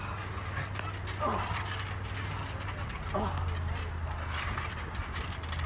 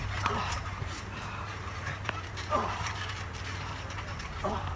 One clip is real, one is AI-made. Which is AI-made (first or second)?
second